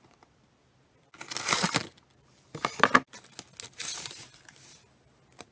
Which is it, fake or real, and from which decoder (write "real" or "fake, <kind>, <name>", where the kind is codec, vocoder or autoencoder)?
real